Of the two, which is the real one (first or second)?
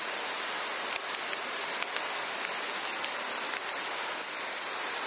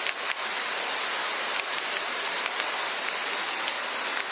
second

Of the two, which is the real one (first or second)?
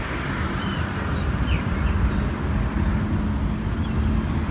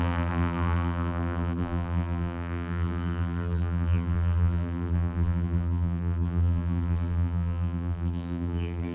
first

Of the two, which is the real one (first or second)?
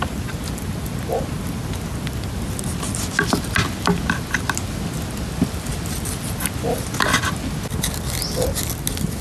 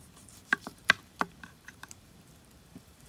first